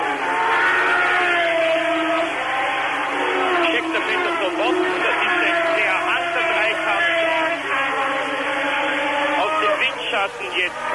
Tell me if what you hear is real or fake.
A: real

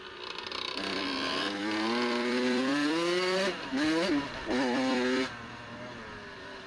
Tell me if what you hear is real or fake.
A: fake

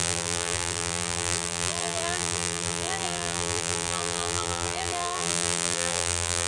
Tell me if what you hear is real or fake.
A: fake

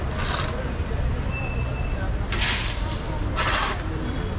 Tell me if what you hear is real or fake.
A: real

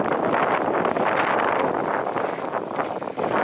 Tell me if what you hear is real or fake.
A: real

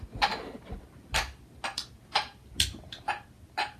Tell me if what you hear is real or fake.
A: real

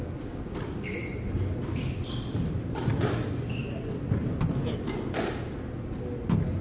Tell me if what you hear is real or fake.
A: real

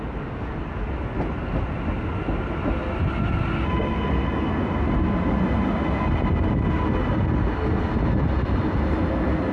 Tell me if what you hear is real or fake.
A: real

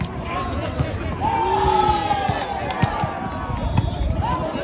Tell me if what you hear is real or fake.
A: real